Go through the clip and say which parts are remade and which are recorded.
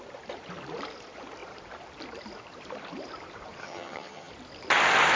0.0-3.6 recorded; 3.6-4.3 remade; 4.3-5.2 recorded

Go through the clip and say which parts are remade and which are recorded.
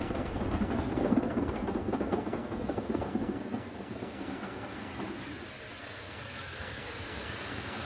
0.0-4.9 remade; 4.9-5.8 recorded; 5.8-7.9 remade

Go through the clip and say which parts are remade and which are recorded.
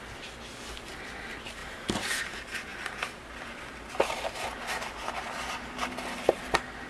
0.0-1.6 recorded; 1.6-2.2 remade; 2.2-6.9 recorded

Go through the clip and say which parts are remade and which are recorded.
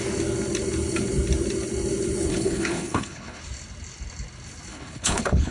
0.0-2.3 recorded; 2.3-3.4 remade; 3.4-4.7 recorded; 4.7-5.5 remade